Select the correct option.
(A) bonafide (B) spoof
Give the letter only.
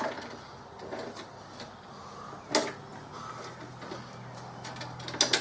A